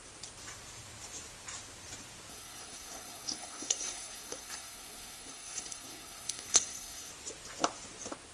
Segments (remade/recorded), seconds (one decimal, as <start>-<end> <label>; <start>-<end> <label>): 0.0-2.3 recorded; 2.3-7.1 remade; 7.1-8.3 recorded